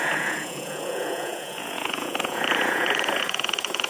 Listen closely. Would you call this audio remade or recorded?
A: remade